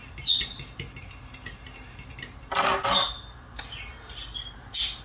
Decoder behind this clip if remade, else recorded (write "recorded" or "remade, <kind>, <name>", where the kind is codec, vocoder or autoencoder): recorded